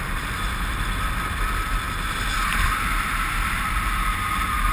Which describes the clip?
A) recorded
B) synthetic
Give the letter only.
B